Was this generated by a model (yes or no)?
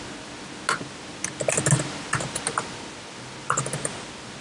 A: no